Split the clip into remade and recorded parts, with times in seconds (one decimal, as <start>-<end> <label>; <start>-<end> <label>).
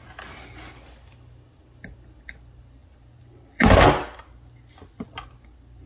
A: 0.0-5.9 recorded